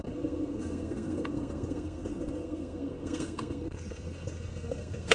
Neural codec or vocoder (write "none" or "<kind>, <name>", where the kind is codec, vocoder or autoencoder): codec, SNAC